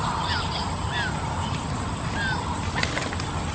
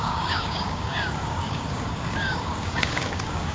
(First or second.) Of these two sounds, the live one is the first